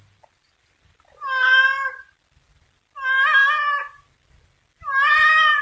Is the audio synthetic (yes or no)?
no